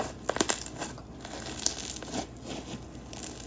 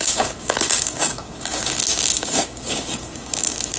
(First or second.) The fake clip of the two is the second